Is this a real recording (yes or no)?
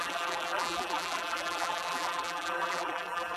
no